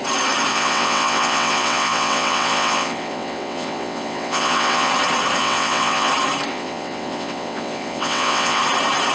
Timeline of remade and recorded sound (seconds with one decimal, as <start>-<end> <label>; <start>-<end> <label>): 0.0-0.5 recorded; 0.5-4.9 remade; 4.9-5.4 recorded; 5.4-6.1 remade; 6.1-6.5 recorded; 6.5-8.6 remade; 8.6-9.1 recorded